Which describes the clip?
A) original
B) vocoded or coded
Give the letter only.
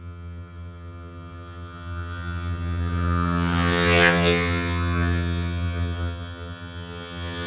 B